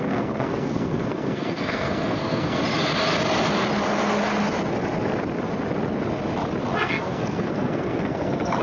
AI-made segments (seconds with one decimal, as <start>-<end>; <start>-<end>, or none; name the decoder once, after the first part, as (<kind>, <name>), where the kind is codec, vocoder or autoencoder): 0.0-2.6 (codec, SNAC); 6.8-8.6